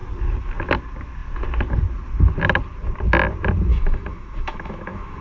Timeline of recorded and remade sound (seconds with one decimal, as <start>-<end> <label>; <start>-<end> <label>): 0.0-3.7 recorded; 3.7-5.2 remade